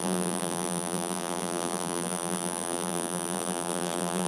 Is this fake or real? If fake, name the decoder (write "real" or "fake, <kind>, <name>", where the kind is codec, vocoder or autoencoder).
fake, vocoder, BigVGAN v2